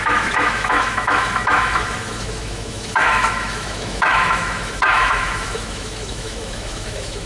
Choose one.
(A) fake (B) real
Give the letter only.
A